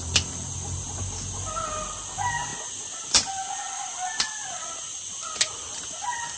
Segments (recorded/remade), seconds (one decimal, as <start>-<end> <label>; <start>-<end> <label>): 0.0-6.4 recorded